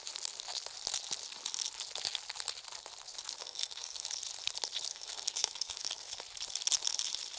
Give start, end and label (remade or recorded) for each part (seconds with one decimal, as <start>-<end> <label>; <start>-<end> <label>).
0.0-3.4 recorded; 3.4-4.1 remade; 4.1-4.9 recorded; 4.9-6.2 remade; 6.2-7.4 recorded